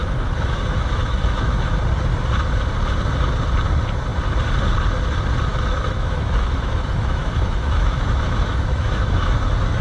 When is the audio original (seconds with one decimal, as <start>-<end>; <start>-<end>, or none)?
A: 1.8-5.5

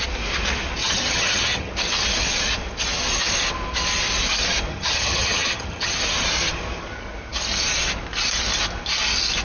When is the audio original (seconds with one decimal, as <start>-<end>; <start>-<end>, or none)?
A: 0.0-0.8; 1.7-4.7; 5.9-9.4